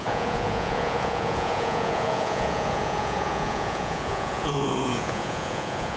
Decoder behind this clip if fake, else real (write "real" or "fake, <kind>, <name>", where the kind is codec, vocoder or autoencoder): fake, vocoder, Vocos